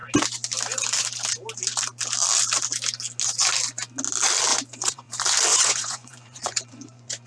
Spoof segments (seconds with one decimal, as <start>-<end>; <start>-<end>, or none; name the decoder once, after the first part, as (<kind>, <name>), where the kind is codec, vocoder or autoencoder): 4.5-5.1 (vocoder, Vocos); 5.5-7.3